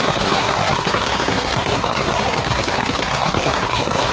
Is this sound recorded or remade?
remade